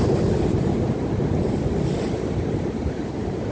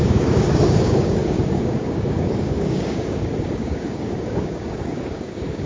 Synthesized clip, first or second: second